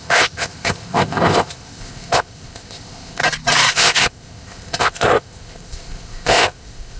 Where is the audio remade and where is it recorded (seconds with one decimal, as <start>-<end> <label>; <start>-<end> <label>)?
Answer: 0.0-3.2 remade; 3.2-3.7 recorded; 3.7-7.0 remade

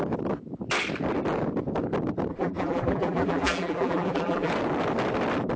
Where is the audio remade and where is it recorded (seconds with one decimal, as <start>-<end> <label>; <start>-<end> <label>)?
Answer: 0.0-2.3 recorded; 2.3-4.5 remade; 4.5-5.6 recorded

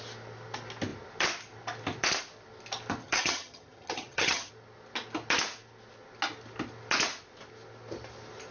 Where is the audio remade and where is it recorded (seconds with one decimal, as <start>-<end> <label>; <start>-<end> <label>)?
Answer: 0.0-3.0 recorded; 3.0-4.5 remade; 4.5-8.5 recorded

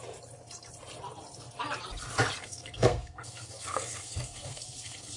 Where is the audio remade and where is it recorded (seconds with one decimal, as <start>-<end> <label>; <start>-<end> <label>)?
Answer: 0.0-2.4 recorded; 2.4-5.2 remade